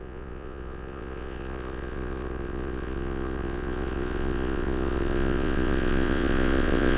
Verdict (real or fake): fake